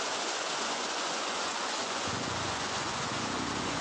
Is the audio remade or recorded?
remade